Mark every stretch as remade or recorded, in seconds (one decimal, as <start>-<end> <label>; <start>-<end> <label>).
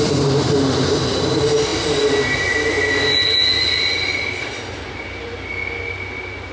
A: 0.0-6.5 recorded